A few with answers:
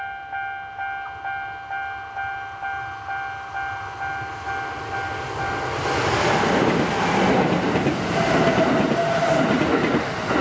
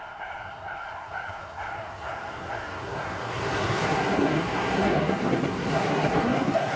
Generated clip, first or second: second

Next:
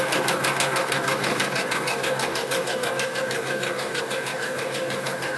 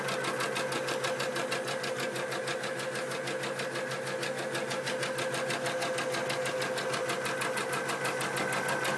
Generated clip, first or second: first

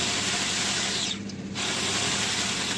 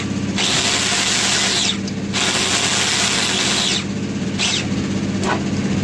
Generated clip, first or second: first